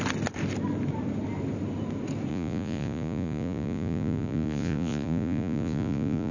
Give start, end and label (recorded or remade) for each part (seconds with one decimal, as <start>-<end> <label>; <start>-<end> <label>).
0.0-2.3 recorded; 2.3-6.3 remade